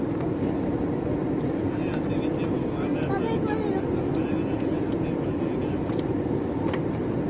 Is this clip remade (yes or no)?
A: no